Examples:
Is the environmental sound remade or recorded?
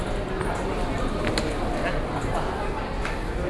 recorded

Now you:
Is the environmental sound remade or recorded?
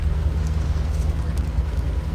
remade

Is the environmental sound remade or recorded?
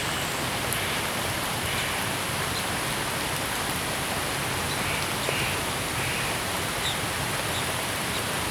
recorded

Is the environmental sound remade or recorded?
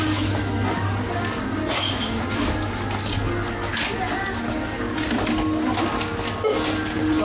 recorded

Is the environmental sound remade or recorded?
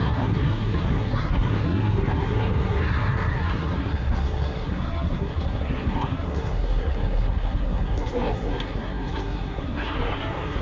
remade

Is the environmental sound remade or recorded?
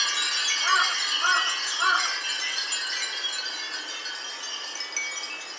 recorded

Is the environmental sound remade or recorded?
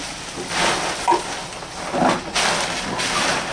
recorded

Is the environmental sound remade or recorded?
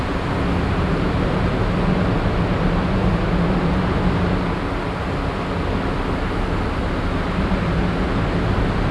recorded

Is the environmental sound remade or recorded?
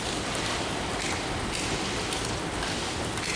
recorded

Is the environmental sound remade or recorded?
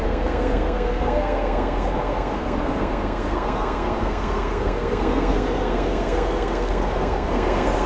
remade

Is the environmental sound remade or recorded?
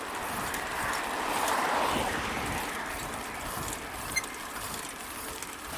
recorded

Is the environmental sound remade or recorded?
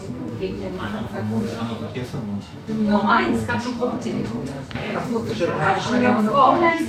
remade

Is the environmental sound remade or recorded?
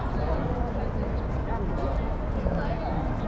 recorded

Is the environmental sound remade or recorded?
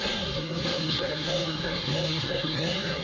remade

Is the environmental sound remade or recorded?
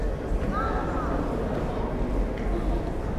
recorded